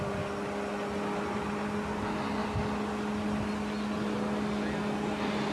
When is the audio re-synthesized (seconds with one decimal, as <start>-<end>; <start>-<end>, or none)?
none